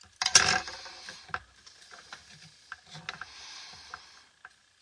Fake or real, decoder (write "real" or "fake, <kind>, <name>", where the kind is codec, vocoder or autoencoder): real